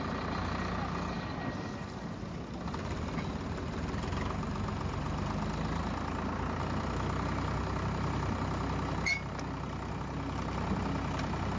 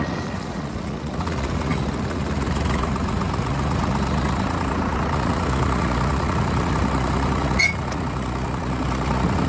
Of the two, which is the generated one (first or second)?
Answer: second